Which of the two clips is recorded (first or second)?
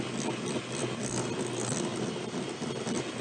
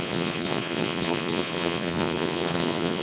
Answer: first